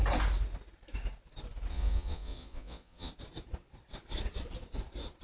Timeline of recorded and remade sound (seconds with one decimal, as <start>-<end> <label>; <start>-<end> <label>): 0.0-1.7 recorded; 1.7-3.1 remade; 3.1-5.2 recorded